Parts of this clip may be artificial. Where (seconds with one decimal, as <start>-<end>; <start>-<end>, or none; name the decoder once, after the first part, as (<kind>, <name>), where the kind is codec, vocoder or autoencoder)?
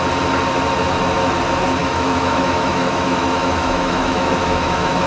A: 1.8-5.1 (autoencoder, DAC-VAE)